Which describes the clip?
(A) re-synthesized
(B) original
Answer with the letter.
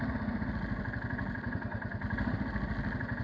B